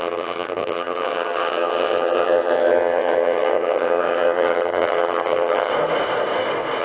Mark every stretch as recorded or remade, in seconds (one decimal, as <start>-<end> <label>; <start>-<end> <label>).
0.0-5.7 remade; 5.7-6.8 recorded